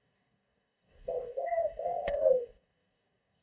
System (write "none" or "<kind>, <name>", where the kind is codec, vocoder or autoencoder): codec, DAC